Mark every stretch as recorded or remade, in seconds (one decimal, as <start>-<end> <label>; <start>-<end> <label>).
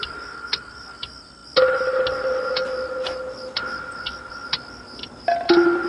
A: 0.0-5.9 recorded